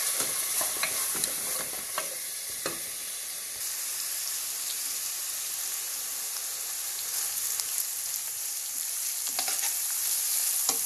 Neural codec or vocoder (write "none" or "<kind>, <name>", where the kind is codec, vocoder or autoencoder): vocoder, BigVGAN v2